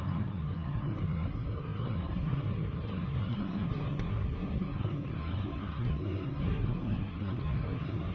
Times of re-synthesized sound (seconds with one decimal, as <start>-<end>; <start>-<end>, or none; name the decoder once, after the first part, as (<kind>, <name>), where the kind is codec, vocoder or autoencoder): 0.0-8.1 (codec, SNAC)